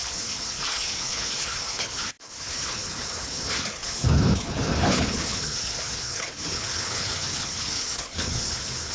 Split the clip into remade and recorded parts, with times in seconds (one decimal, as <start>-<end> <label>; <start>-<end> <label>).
0.0-8.9 remade

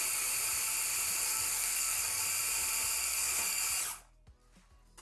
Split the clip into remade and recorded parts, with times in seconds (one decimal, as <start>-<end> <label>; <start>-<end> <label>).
0.0-1.2 recorded; 1.2-2.2 remade; 2.2-3.0 recorded; 3.0-3.6 remade; 3.6-5.0 recorded

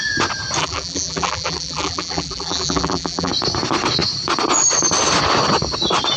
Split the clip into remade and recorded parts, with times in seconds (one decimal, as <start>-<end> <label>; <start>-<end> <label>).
0.0-0.6 recorded; 0.6-3.3 remade; 3.3-6.2 recorded